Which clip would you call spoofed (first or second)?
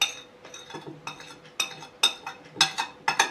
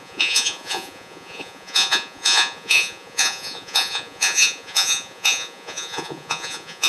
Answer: second